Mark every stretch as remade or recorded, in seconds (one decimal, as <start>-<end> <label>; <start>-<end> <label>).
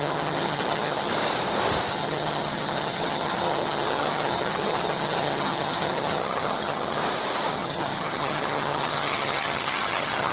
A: 0.0-1.1 remade; 1.1-1.9 recorded; 1.9-7.0 remade; 7.0-7.5 recorded; 7.5-10.3 remade